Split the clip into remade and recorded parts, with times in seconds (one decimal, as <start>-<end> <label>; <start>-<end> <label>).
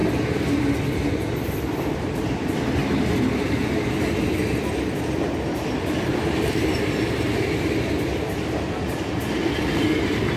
0.0-6.1 recorded; 6.1-8.0 remade; 8.0-10.4 recorded